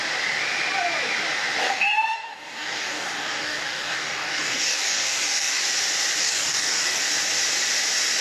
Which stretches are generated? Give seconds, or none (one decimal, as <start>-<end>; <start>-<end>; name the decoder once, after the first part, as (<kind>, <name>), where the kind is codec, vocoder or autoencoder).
1.6-5.6 (codec, DAC); 6.2-7.0